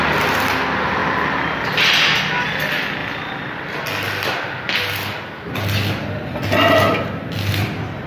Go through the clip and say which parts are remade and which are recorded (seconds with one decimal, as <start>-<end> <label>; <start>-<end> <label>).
0.0-8.1 recorded